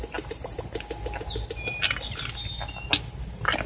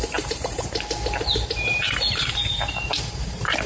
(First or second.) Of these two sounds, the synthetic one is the second